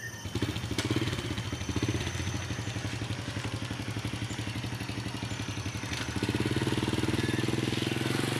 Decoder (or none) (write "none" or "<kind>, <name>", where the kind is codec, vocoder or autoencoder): none